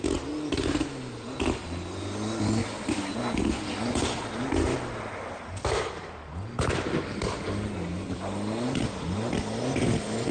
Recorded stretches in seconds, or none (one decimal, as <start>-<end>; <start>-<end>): 0.0-10.3